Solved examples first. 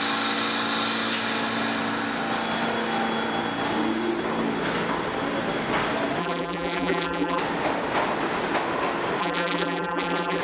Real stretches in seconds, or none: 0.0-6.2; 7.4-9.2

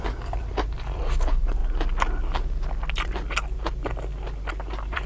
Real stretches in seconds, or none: 1.6-4.5

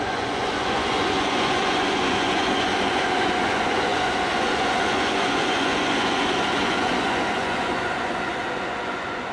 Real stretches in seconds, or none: none

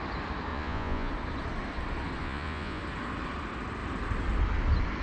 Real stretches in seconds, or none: 0.0-0.5; 1.1-2.2; 2.8-5.0

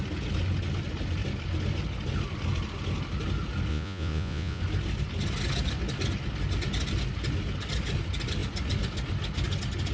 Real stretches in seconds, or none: 0.0-3.7; 4.6-9.9